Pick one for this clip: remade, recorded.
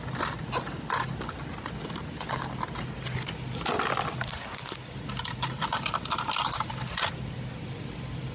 recorded